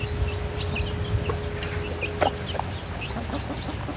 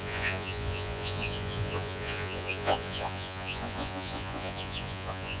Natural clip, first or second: first